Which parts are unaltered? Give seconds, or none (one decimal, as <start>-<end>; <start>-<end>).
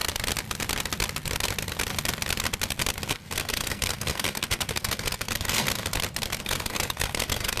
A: 0.0-3.1; 5.7-6.4